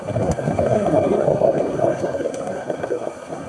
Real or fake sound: fake